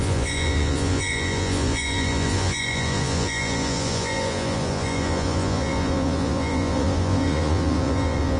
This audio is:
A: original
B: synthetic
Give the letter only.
B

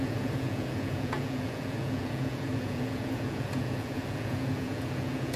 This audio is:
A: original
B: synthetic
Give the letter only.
B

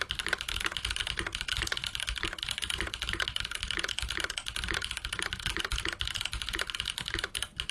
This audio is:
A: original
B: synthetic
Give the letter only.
A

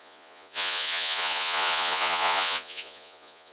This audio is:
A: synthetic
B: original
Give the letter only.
A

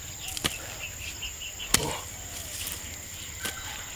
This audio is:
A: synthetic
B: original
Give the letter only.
B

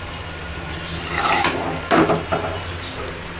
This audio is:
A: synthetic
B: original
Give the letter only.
B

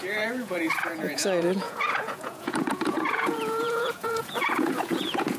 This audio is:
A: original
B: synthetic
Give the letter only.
B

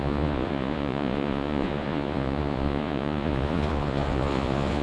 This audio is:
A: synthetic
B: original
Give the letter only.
A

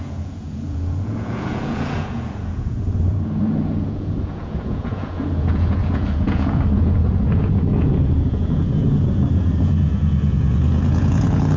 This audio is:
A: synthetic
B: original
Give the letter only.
A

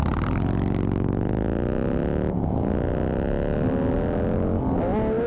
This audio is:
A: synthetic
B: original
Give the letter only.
B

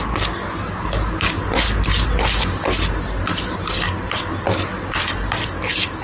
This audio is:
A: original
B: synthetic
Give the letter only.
A